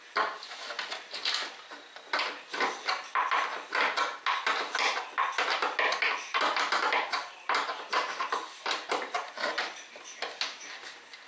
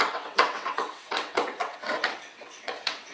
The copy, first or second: second